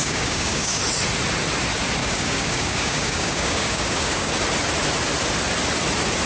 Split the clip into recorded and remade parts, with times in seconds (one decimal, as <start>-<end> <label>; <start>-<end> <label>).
0.0-0.8 remade; 0.8-2.0 recorded; 2.0-4.3 remade; 4.3-6.3 recorded